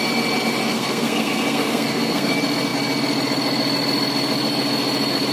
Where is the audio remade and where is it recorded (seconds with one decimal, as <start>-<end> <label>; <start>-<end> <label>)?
0.0-0.7 recorded; 0.7-2.3 remade; 2.3-5.3 recorded